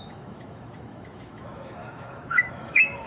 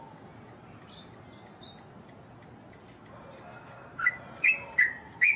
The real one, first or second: second